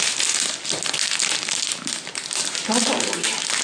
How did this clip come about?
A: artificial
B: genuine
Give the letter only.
B